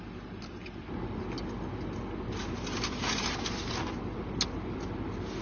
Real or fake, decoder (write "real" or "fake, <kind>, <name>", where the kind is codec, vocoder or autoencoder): real